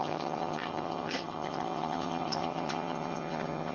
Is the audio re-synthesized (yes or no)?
yes